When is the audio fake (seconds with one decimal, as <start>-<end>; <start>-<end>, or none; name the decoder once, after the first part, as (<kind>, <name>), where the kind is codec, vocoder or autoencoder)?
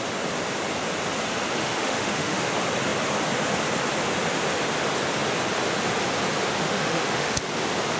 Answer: 1.6-2.5 (autoencoder, DAC-VAE); 6.6-7.4